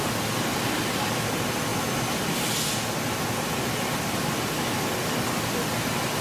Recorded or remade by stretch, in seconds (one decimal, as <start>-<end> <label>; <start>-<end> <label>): 0.0-6.2 recorded